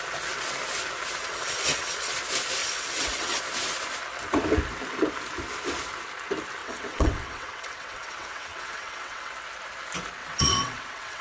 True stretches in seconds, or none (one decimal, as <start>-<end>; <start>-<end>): 0.0-1.2; 2.1-2.6; 3.4-6.6; 9.3-10.2